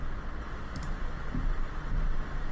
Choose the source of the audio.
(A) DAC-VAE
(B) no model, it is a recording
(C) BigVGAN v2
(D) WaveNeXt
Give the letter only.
B